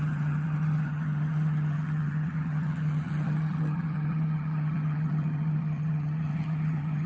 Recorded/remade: remade